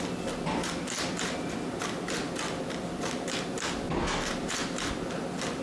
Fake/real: real